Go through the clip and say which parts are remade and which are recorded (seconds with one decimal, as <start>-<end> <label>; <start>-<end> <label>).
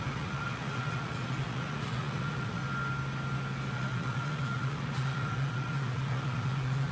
0.0-2.6 remade; 2.6-3.7 recorded; 3.7-6.9 remade